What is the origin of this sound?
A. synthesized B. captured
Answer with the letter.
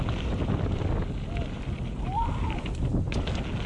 B